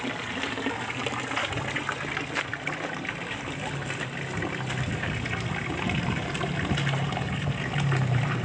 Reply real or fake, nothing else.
real